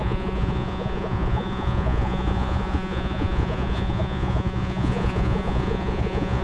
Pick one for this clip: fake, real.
fake